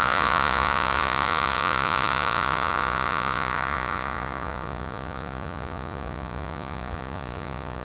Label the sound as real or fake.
fake